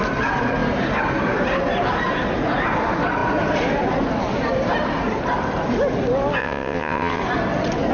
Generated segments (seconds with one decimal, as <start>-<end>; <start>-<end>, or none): 6.4-7.2